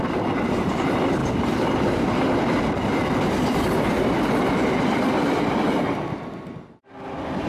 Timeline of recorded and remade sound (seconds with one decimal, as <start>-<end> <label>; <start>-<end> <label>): 0.0-7.5 recorded